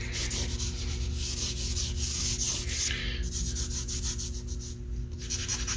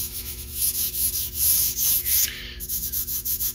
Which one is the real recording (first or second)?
first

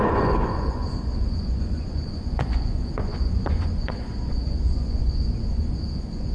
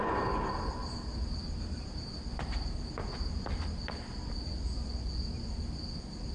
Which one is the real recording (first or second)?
second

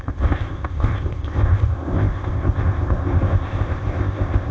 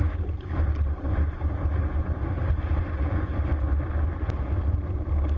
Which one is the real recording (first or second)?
second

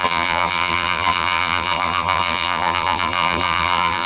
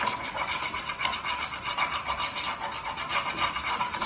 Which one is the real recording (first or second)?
second